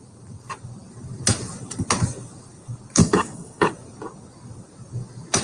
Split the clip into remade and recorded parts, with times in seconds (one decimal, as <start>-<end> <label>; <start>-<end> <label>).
0.0-3.0 recorded; 3.0-3.7 remade; 3.7-5.4 recorded